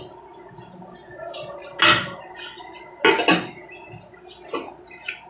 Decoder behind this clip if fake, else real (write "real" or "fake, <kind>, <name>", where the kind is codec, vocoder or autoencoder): real